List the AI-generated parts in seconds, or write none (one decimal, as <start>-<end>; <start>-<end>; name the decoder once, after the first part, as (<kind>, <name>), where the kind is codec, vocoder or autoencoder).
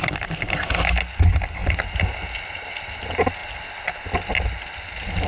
none